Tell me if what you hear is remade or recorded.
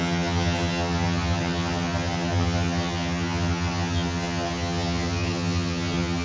remade